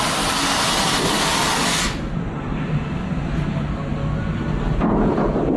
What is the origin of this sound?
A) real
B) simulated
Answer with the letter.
A